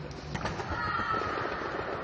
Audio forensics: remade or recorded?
recorded